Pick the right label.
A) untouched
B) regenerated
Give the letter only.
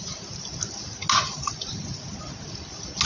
A